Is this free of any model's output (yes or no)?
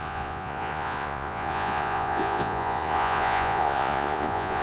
no